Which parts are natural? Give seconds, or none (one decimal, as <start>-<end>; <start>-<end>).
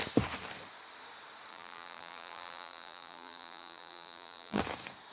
0.0-1.5; 4.6-5.1